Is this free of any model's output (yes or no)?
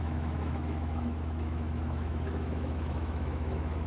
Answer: no